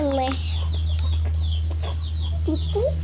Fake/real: real